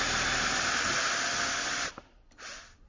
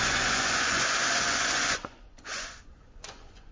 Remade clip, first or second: second